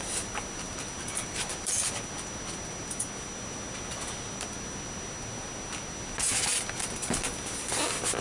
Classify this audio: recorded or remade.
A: recorded